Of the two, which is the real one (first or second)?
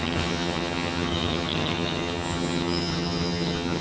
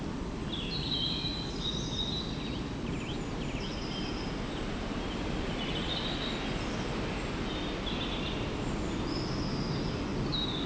second